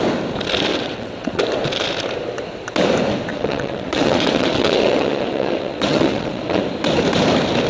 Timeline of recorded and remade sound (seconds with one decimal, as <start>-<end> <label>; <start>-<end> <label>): 0.0-0.7 recorded; 0.7-1.4 remade; 1.4-3.3 recorded; 3.3-6.6 remade; 6.6-7.7 recorded